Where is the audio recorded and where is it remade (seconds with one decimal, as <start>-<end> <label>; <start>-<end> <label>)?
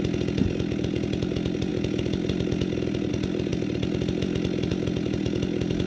0.0-5.9 recorded